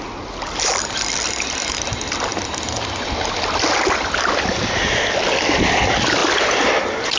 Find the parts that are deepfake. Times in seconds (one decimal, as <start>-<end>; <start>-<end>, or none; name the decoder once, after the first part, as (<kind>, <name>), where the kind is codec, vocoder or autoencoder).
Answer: none